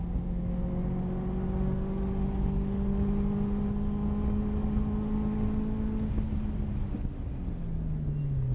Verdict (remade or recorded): recorded